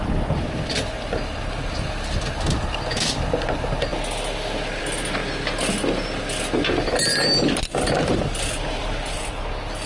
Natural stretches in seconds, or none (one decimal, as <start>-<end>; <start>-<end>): 0.0-9.9

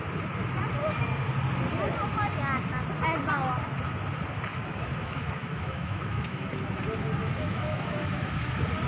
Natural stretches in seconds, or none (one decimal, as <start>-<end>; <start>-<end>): 0.0-4.5; 6.5-7.2; 8.5-8.9